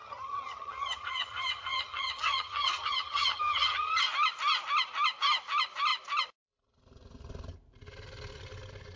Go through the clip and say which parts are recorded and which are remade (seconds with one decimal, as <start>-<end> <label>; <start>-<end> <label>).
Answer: 0.0-4.0 remade; 4.0-9.0 recorded